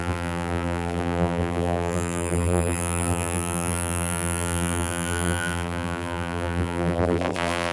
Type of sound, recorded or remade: remade